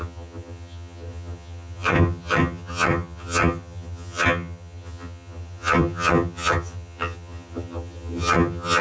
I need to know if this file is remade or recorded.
remade